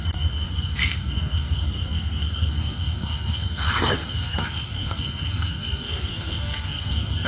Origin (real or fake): fake